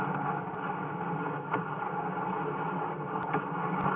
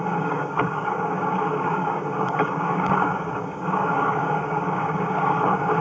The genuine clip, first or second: first